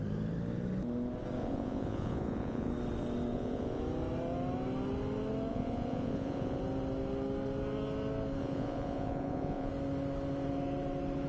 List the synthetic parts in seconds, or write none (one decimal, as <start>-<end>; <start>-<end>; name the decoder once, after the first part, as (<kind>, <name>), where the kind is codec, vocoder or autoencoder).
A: 1.4-2.7 (vocoder, Vocos); 3.3-3.8; 5.5-6.6; 8.4-9.7

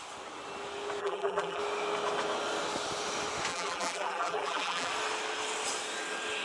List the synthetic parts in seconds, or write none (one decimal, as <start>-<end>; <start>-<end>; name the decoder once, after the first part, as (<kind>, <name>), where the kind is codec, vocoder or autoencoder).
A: 1.0-1.6 (vocoder, BigVGAN v2); 3.5-4.9

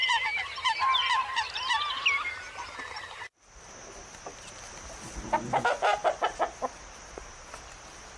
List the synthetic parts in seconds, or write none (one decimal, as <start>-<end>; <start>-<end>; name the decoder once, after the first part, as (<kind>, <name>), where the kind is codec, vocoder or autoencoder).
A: none

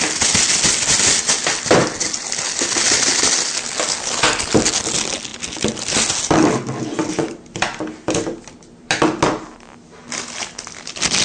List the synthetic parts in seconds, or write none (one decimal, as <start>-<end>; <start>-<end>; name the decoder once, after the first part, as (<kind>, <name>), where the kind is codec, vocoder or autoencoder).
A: none

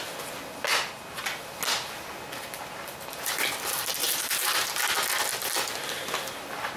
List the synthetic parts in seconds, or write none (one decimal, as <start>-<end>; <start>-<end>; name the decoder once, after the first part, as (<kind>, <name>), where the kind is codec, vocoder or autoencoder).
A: 4.0-4.8 (vocoder, BigVGAN v2)

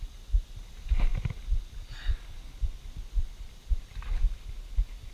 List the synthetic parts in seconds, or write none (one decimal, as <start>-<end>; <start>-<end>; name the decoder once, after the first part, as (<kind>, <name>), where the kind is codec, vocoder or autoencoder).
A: none